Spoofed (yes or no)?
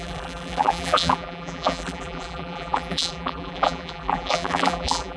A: yes